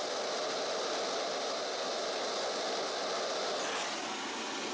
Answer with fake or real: real